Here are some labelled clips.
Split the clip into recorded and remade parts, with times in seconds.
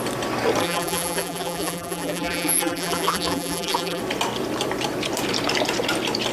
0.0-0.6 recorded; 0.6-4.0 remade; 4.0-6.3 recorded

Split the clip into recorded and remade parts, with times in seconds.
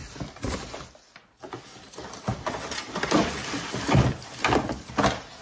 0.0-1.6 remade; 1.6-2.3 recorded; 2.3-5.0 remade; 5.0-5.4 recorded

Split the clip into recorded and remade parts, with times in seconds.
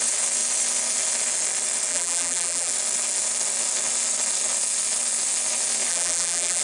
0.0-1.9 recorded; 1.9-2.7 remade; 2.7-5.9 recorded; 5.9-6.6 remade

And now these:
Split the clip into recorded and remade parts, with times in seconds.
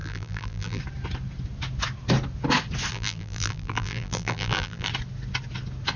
0.0-0.8 remade; 0.8-2.9 recorded; 2.9-4.9 remade; 4.9-6.0 recorded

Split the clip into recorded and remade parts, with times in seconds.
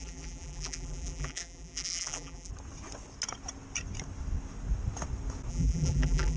0.0-2.5 remade; 2.5-5.5 recorded; 5.5-6.4 remade